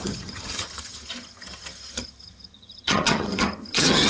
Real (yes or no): no